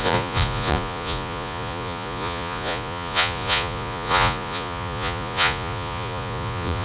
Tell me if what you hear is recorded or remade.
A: remade